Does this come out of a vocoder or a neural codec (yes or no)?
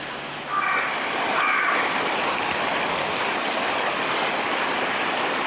no